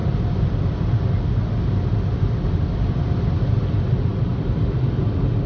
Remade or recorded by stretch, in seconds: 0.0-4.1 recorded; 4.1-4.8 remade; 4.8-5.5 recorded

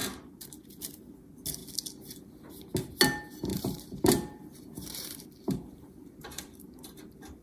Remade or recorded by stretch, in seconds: 0.0-3.5 recorded; 3.5-6.7 remade; 6.7-7.4 recorded

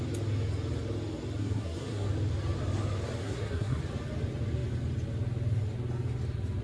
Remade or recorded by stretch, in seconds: 0.0-1.4 recorded; 1.4-2.1 remade; 2.1-3.2 recorded; 3.2-3.8 remade; 3.8-6.6 recorded